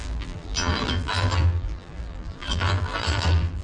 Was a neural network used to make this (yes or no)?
yes